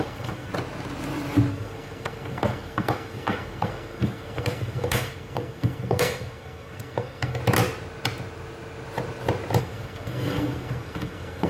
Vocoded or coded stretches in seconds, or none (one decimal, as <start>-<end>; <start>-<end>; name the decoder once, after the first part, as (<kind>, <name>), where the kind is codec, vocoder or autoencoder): 0.0-0.5 (codec, SNAC); 1.5-7.4; 9.6-11.5